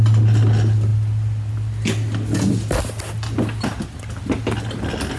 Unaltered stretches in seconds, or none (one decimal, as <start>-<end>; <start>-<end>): 0.0-5.2